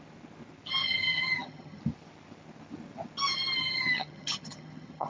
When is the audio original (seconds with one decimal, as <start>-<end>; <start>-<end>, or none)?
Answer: 0.0-0.8; 1.8-3.6